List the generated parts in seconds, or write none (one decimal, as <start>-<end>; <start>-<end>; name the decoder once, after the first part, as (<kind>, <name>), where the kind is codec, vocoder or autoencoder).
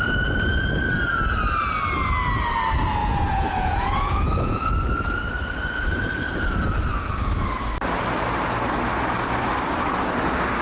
3.0-4.7 (vocoder, Vocos)